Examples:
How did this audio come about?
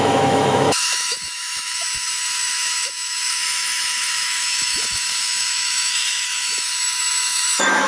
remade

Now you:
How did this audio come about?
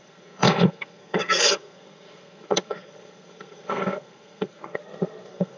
remade